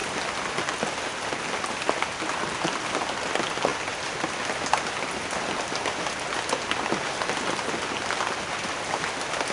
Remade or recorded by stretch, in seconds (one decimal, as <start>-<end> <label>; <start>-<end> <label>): 0.0-9.5 recorded